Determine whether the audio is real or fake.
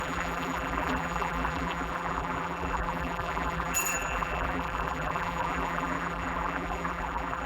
fake